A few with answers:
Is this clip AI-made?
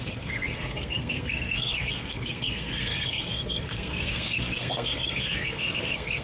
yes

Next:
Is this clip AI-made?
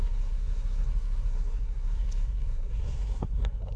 yes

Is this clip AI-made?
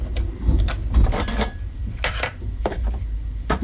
no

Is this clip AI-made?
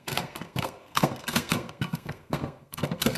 yes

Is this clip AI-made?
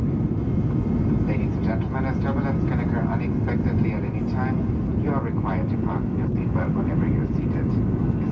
no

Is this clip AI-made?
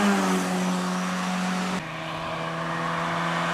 no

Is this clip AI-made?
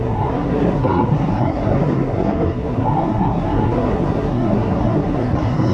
yes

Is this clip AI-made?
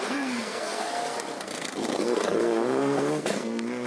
yes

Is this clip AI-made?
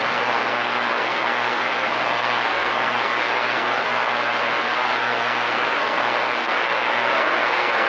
yes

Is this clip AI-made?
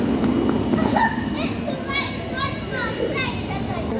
no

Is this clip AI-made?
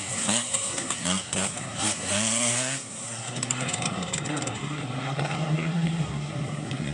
yes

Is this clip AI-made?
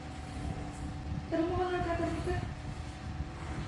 no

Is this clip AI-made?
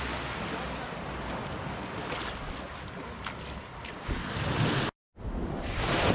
no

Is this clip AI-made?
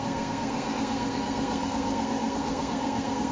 yes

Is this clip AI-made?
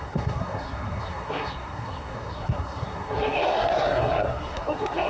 yes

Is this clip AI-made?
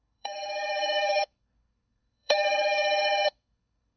yes